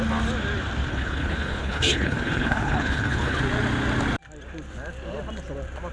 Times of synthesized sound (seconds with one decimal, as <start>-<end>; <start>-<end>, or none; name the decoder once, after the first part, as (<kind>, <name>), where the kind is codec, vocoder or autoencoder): 0.9-3.4 (codec, HILCodec)